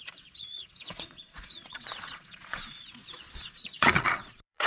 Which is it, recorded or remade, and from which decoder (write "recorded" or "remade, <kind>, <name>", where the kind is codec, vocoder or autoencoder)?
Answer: remade, vocoder, Vocos